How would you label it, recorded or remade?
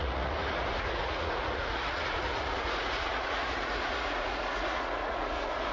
remade